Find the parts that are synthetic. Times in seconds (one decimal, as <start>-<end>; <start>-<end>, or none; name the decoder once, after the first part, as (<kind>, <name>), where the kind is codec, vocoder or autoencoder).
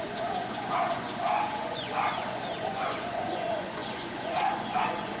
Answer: 0.0-5.2 (vocoder, Vocos)